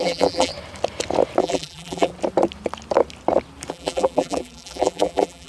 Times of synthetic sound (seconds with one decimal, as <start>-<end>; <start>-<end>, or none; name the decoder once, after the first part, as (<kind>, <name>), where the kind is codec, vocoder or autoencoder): 0.0-0.5 (vocoder, BigVGAN v2); 1.4-2.1; 3.7-5.5